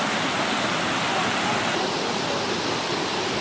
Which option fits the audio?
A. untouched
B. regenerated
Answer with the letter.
A